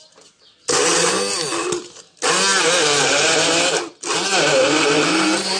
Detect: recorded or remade recorded